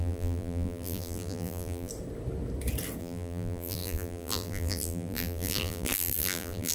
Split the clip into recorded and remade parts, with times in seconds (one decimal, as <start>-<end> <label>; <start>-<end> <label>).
0.0-1.9 remade; 1.9-3.0 recorded; 3.0-6.7 remade